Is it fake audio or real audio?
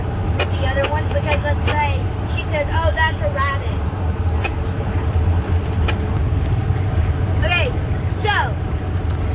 real